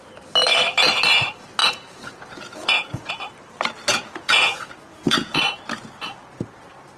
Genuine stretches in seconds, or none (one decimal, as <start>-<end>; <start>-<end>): 0.0-1.6; 3.1-3.9; 5.4-7.0